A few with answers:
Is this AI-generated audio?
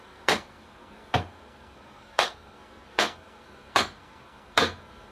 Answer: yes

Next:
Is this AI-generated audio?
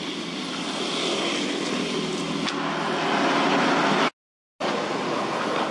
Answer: no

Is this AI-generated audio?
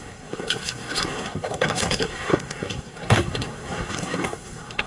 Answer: yes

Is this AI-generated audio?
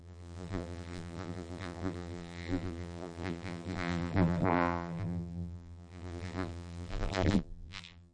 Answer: yes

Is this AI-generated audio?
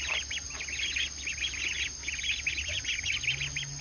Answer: no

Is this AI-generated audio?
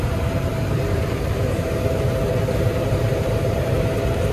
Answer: yes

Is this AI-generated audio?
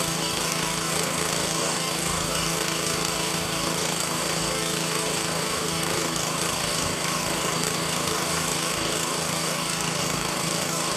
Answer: yes